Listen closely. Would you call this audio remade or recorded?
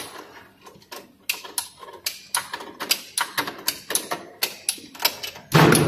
recorded